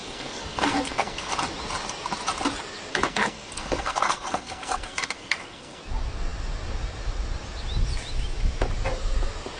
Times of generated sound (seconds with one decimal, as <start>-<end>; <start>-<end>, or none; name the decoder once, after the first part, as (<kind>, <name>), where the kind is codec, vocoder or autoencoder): 0.0-1.3 (codec, SNAC); 2.9-5.8